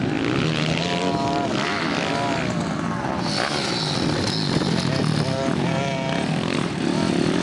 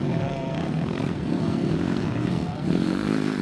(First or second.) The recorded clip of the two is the first